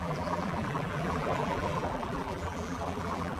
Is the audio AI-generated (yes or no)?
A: yes